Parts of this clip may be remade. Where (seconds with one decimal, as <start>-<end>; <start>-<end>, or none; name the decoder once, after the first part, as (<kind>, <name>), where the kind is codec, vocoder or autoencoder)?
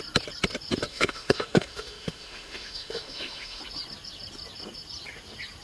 0.9-3.6 (autoencoder, DAC-VAE)